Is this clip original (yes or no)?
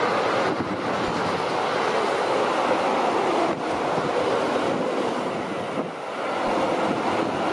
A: yes